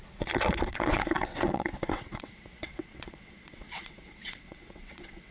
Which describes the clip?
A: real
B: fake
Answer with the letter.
B